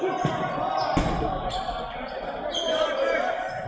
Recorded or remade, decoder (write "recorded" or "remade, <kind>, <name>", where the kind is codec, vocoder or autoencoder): recorded